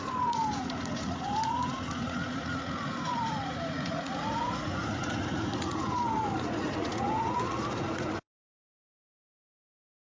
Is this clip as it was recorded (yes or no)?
no